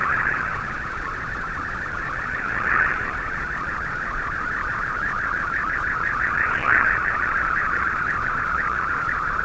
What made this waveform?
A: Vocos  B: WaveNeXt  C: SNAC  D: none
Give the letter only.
A